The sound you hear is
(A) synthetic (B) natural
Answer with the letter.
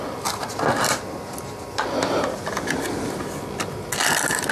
B